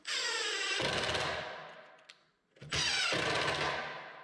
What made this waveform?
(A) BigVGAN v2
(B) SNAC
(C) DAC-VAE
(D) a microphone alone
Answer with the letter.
D